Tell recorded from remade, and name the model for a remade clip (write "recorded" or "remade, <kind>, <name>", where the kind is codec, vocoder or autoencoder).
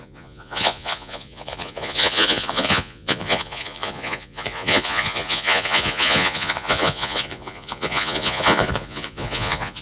remade, vocoder, Vocos